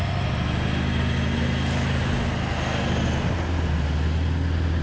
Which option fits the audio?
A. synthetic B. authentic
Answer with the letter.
B